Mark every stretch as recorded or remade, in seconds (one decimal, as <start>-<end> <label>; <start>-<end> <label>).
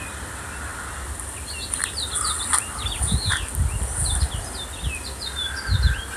0.0-6.2 recorded